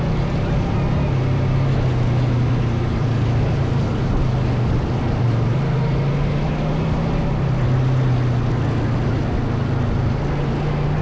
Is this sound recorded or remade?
recorded